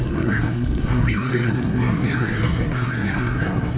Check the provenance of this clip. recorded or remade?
remade